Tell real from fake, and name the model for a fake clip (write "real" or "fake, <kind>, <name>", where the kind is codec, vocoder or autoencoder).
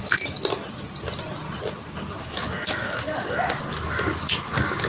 real